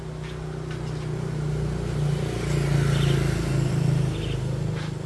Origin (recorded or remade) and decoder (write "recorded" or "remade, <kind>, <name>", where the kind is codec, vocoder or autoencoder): recorded